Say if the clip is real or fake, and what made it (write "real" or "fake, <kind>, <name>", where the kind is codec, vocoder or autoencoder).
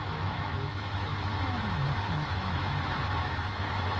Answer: fake, autoencoder, DAC-VAE